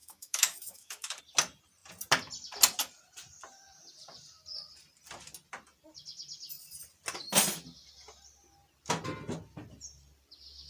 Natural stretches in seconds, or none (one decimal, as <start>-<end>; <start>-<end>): 1.2-10.7